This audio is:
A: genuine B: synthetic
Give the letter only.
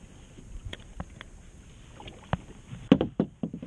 A